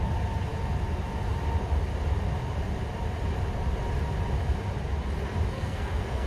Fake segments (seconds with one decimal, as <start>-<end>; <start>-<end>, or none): 5.5-6.3

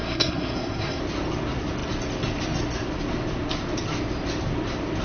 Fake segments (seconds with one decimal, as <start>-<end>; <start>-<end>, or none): 0.0-1.0

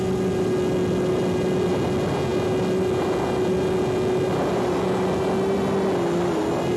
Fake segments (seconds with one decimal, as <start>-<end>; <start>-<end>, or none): none

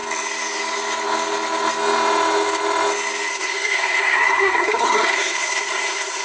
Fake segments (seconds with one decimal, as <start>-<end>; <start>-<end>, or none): 3.3-6.2

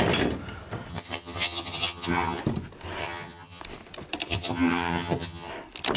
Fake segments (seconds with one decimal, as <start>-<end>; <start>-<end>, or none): 0.9-2.4; 3.0-3.6; 4.3-5.5